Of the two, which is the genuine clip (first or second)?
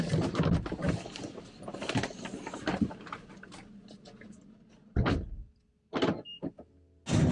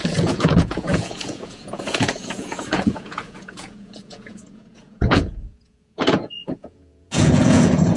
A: first